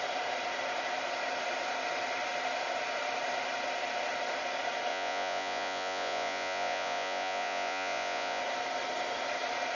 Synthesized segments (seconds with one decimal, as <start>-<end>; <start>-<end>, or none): 4.9-8.4